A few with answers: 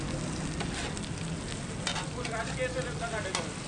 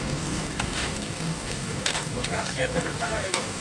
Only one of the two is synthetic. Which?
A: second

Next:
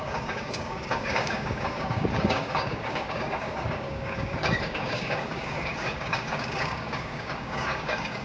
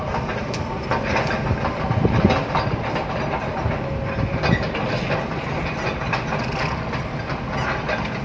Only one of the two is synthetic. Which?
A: first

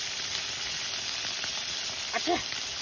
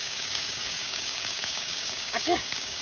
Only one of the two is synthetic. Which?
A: second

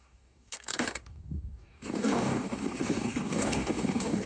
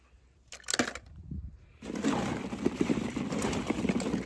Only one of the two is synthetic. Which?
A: first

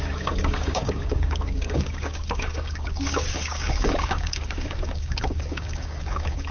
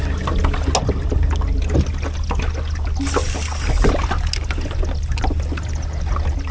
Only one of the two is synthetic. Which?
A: first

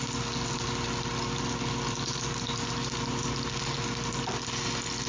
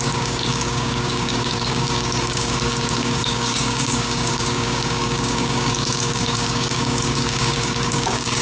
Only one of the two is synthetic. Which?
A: second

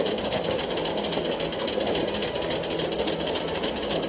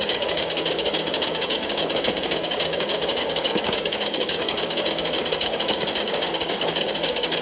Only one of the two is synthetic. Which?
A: second